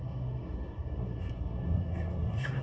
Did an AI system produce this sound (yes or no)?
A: yes